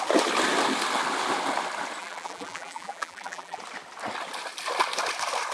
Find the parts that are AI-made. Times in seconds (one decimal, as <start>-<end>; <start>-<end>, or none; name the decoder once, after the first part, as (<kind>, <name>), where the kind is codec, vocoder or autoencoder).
2.0-3.6 (vocoder, BigVGAN v2)